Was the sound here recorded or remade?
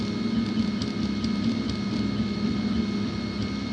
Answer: recorded